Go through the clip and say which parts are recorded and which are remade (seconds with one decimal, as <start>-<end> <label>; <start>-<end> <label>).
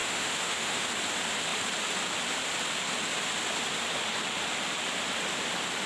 0.0-0.9 remade; 0.9-5.9 recorded